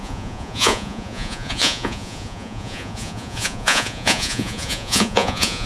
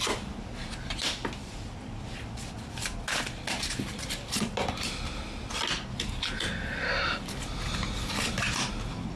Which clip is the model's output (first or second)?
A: first